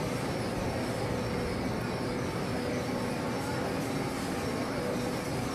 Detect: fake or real real